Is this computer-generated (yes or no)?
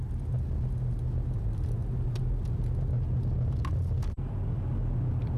no